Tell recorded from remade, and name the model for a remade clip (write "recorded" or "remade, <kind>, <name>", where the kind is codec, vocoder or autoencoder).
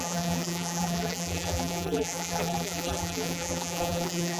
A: remade, vocoder, BigVGAN v2